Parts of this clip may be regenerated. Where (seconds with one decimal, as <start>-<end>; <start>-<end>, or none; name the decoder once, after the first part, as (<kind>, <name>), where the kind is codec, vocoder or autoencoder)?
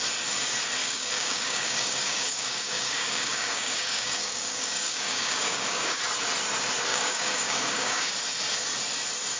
0.8-6.0 (codec, DAC); 6.9-8.1